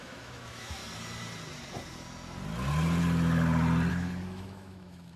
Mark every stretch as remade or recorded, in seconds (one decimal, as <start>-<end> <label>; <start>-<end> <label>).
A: 0.0-0.8 remade; 0.8-3.9 recorded; 3.9-5.2 remade